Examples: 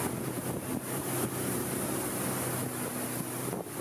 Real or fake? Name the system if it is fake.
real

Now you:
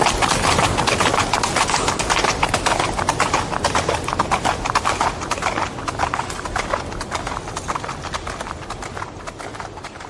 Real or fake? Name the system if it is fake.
real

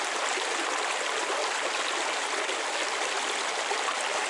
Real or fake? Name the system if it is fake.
real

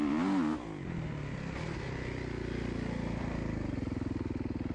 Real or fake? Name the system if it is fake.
real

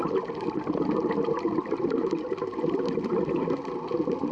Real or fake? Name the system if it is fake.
real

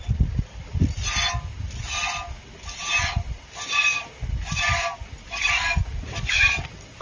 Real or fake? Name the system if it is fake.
real